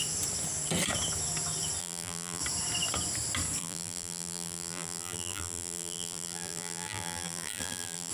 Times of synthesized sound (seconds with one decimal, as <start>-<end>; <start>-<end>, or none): 1.8-2.4; 3.6-8.1